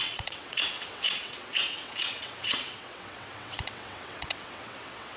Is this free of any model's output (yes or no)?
no